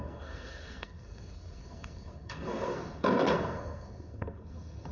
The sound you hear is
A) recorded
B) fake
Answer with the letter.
B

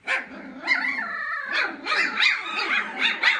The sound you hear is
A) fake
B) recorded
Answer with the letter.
B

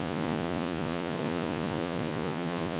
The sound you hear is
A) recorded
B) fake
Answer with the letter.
B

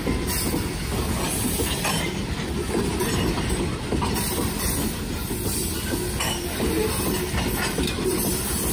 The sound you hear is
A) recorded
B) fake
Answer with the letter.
A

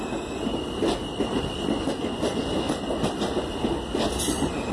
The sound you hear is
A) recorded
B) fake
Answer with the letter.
A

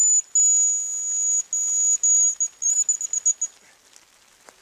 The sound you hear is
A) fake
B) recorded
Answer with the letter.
B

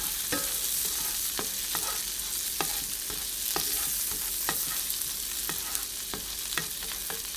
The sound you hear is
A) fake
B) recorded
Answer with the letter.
B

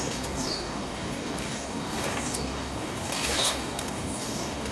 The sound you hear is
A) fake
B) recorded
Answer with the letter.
A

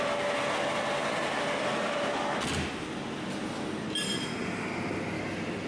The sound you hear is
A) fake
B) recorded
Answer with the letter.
B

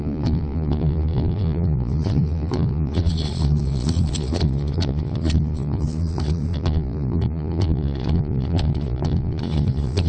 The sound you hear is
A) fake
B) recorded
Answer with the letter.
A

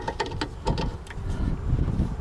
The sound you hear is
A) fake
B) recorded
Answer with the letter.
B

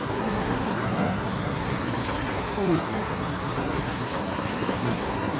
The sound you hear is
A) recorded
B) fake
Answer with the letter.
B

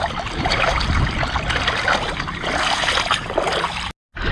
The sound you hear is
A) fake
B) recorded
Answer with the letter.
B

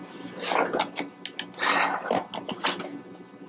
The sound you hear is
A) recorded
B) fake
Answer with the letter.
A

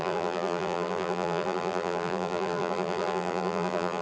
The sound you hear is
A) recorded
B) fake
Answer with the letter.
B